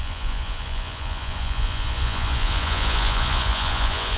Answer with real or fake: fake